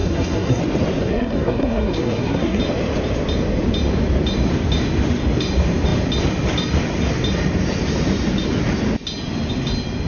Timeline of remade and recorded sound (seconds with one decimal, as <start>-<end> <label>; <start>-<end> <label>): 0.0-0.6 remade; 0.6-1.0 recorded; 1.0-2.6 remade; 2.6-10.1 recorded